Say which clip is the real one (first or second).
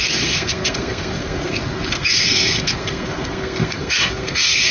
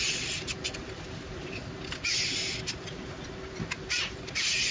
second